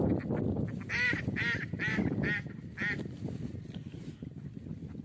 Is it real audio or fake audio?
real